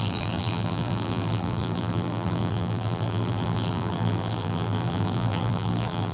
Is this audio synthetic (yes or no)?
yes